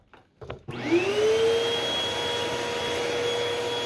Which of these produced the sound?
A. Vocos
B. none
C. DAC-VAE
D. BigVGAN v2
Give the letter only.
B